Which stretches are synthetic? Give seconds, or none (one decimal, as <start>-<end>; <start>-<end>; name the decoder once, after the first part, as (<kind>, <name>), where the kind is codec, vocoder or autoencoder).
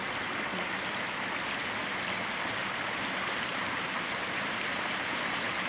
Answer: 3.5-5.7 (vocoder, BigVGAN v2)